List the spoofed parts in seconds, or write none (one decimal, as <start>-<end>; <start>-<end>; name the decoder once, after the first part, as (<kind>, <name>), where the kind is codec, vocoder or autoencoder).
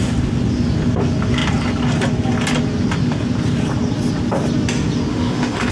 5.1-5.7 (autoencoder, DAC-VAE)